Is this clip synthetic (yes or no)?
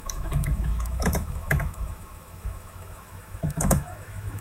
yes